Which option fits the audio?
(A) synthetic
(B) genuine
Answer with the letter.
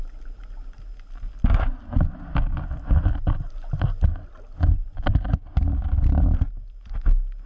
B